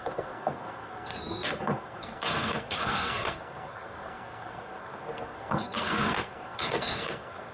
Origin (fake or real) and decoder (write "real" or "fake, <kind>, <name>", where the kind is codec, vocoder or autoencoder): fake, codec, SNAC